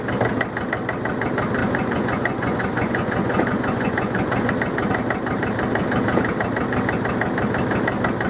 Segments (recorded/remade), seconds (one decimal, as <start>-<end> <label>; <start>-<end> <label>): 0.0-1.6 recorded; 1.6-4.5 remade; 4.5-8.3 recorded